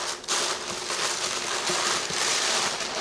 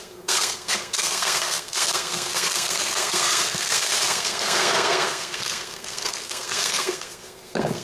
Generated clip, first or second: second